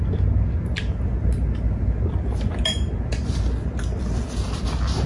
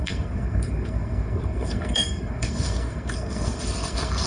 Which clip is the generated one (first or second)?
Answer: second